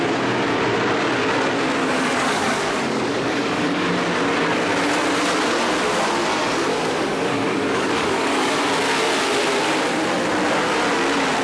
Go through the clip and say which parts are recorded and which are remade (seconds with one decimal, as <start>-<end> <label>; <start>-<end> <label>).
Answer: 0.0-1.8 recorded; 1.8-3.9 remade; 3.9-6.7 recorded; 6.7-8.5 remade; 8.5-11.4 recorded